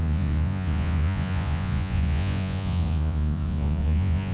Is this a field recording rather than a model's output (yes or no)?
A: no